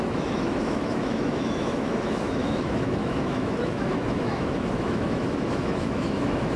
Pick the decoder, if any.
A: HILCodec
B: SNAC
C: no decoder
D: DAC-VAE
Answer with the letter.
D